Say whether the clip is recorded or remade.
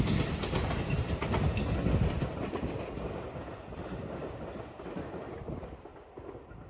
recorded